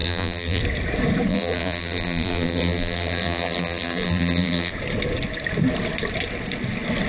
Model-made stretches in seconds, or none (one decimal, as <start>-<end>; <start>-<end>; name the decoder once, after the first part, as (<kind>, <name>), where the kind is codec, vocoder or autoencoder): 0.0-0.6 (vocoder, BigVGAN v2); 1.3-4.7